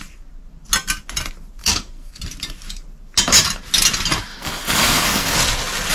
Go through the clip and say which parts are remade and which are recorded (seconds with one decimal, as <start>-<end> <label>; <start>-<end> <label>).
0.0-1.6 recorded; 1.6-2.2 remade; 2.2-4.3 recorded; 4.3-5.4 remade; 5.4-5.9 recorded